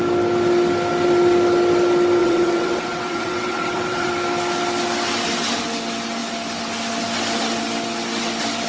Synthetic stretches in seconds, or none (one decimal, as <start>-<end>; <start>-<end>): 2.2-4.1